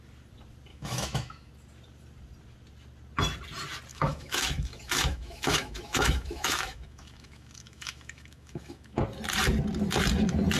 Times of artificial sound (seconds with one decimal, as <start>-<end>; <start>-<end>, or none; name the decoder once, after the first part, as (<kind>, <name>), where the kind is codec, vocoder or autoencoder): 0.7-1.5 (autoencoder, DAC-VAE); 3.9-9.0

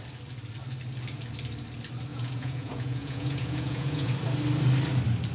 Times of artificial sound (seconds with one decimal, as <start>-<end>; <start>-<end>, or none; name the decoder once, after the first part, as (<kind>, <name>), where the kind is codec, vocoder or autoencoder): 2.1-4.1 (vocoder, Vocos)

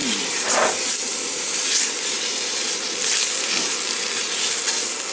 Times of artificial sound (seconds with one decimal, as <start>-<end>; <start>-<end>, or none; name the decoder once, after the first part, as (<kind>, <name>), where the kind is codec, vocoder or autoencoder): 0.0-0.7 (vocoder, BigVGAN v2); 1.1-3.1

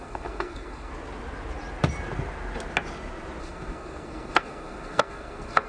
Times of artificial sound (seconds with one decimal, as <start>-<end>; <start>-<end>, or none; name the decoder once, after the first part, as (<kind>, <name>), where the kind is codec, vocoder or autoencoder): 0.0-0.9 (codec, SNAC); 3.4-5.7

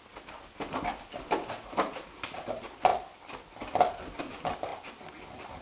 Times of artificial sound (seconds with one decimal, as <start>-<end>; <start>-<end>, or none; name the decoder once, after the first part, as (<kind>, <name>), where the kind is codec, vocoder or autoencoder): none

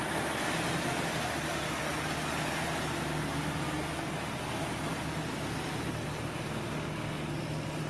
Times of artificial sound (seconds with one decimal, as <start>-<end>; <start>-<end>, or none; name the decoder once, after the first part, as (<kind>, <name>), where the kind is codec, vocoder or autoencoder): none

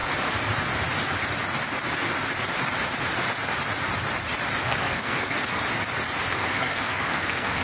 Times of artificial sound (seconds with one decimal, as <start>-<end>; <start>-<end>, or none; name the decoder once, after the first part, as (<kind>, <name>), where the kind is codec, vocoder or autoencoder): 4.6-5.6 (codec, SNAC); 6.3-7.6